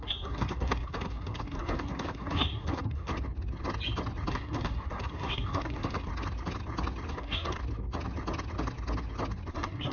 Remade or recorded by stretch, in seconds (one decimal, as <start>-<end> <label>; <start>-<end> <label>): 0.0-3.1 remade; 3.1-4.3 recorded; 4.3-6.1 remade; 6.1-7.1 recorded; 7.1-7.6 remade; 7.6-9.5 recorded; 9.5-9.9 remade